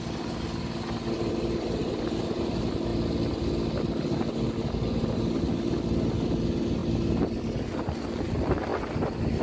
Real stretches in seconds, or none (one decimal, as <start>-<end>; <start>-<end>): 0.0-9.4